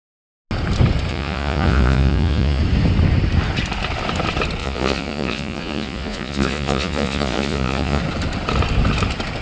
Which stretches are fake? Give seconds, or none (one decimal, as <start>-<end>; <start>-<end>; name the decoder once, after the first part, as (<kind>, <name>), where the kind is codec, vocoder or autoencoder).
1.1-2.6 (vocoder, Vocos); 4.6-8.0